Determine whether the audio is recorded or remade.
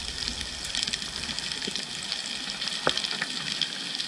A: recorded